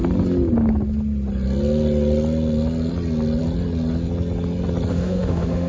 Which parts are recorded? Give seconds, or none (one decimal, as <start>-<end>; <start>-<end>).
0.0-4.9